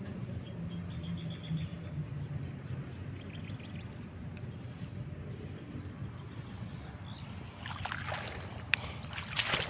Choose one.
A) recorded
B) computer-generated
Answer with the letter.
A